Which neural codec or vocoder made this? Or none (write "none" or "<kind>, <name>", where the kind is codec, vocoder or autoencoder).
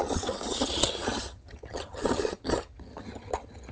vocoder, HiFi-GAN